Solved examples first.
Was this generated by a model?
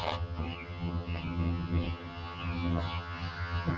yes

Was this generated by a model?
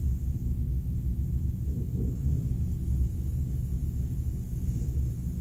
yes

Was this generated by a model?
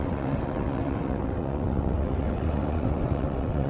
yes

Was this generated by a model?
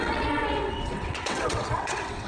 yes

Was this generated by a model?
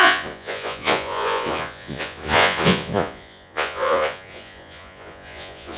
yes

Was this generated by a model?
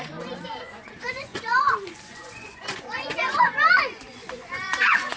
yes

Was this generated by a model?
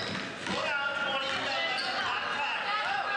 no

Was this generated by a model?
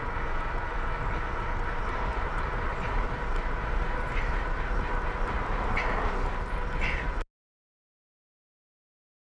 no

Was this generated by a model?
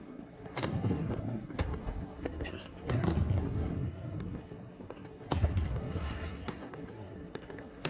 yes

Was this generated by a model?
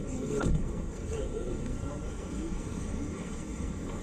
yes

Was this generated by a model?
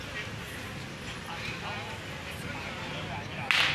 no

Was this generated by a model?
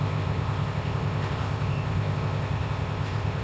yes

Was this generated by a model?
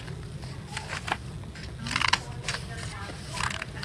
no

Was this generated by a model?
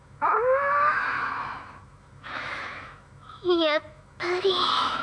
yes